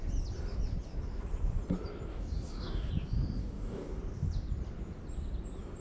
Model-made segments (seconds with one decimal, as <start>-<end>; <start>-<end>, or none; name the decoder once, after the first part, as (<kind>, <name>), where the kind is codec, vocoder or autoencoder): 2.1-2.9 (codec, DAC); 3.4-4.0